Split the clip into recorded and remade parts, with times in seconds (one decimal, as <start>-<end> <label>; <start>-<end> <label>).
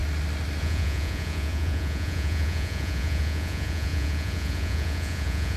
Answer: 0.0-0.6 recorded; 0.6-5.6 remade